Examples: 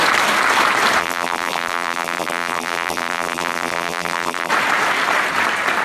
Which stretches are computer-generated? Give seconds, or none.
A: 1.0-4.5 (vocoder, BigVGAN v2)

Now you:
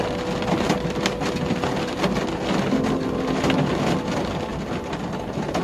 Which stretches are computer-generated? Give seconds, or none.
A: none

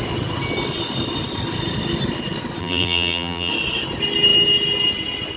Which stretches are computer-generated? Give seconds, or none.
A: 2.6-3.5 (vocoder, BigVGAN v2)